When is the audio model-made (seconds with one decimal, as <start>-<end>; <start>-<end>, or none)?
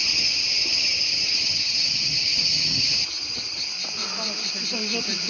0.0-3.7